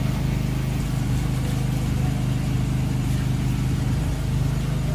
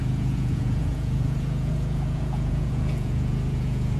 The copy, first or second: second